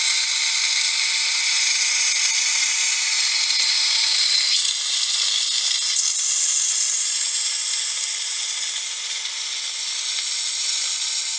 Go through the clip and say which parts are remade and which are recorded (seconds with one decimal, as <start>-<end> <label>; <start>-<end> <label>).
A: 0.0-1.3 recorded; 1.3-4.4 remade; 4.4-11.4 recorded